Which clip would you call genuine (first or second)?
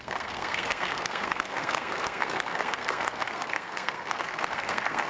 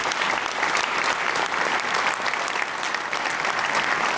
second